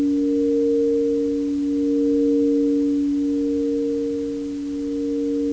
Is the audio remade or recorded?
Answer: recorded